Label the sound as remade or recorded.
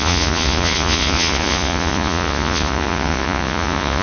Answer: remade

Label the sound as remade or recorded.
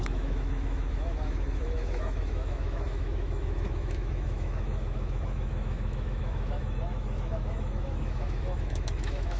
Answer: remade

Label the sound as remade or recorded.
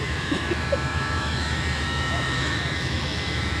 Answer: remade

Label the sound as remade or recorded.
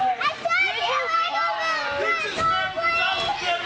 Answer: recorded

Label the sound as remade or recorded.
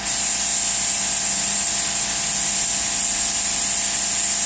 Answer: recorded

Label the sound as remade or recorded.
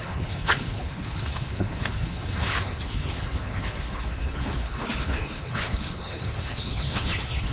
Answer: remade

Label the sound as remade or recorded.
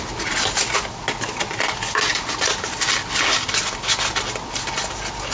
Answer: recorded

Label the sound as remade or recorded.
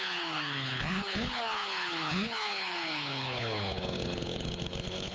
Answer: remade